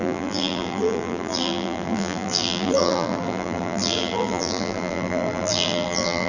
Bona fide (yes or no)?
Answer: no